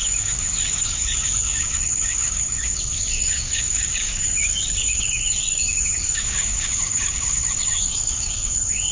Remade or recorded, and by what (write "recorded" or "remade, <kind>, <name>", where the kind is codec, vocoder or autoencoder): remade, codec, DAC